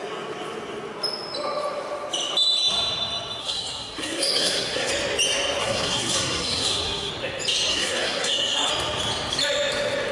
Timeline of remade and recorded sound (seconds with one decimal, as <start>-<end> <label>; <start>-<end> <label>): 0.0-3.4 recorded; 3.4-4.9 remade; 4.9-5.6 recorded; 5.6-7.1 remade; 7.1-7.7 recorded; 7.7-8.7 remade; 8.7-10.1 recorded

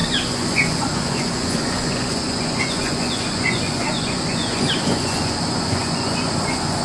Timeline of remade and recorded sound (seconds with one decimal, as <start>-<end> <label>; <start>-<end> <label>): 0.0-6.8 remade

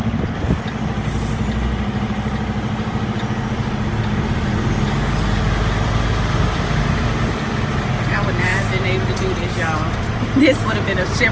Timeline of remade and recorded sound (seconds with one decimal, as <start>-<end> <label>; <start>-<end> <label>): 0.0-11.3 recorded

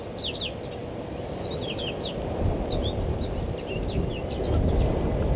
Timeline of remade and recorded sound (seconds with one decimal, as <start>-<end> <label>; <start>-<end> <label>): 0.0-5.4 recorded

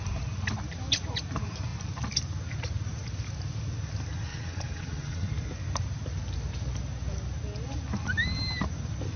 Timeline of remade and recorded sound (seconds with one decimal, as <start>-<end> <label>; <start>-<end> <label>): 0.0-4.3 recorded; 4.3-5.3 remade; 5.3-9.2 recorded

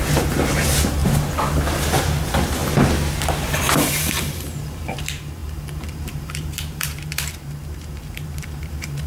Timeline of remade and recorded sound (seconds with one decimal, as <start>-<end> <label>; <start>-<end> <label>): 0.0-2.6 remade; 2.6-3.2 recorded; 3.2-9.1 remade

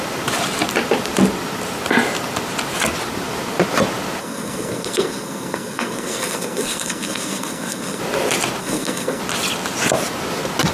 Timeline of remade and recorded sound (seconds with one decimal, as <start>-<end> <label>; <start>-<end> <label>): 0.0-4.2 recorded; 4.2-8.0 remade; 8.0-8.6 recorded; 8.6-9.2 remade; 9.2-10.7 recorded